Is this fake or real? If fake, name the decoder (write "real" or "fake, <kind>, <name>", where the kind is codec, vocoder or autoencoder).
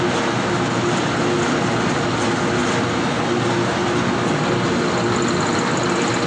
real